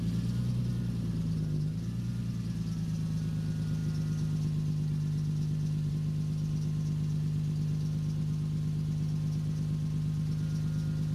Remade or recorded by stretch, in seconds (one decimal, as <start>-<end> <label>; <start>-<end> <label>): 0.0-11.1 recorded